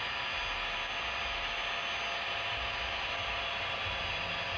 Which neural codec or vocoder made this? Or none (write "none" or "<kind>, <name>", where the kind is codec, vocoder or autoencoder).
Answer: none